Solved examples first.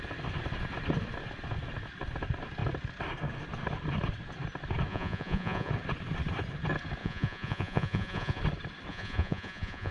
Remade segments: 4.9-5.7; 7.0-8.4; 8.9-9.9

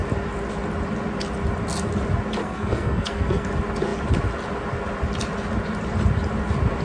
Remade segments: 2.4-3.5